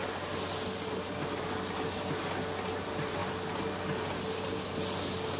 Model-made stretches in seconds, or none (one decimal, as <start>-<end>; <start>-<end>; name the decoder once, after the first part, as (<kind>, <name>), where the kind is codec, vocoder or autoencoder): none